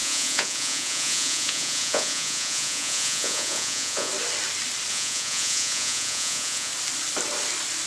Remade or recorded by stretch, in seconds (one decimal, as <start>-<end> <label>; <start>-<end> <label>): 0.0-4.1 remade; 4.1-4.9 recorded; 4.9-6.7 remade; 6.7-7.9 recorded